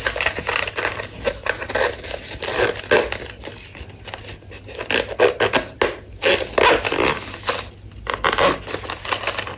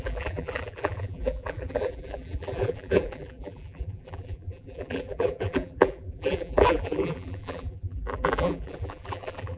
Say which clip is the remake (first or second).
second